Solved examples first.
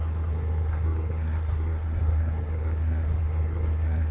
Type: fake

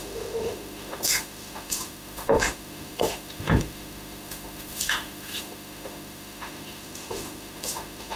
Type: fake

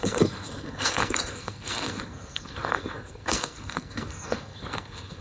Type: fake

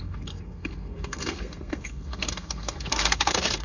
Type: fake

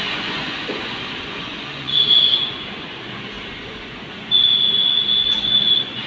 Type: fake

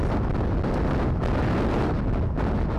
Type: real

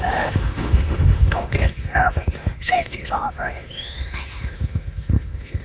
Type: fake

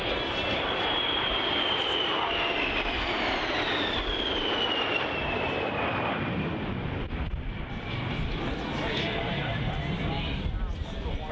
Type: real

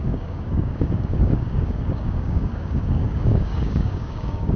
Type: fake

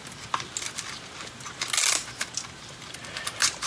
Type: real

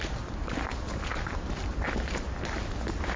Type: real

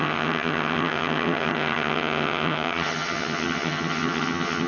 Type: fake